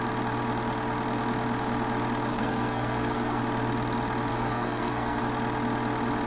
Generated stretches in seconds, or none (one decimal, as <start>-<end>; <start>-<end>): 2.3-3.4; 4.3-5.2